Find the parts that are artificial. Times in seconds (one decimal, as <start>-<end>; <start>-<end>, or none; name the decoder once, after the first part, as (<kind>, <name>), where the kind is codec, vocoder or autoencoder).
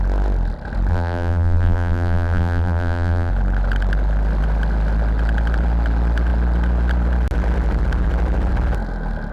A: 0.9-3.3 (vocoder, BigVGAN v2)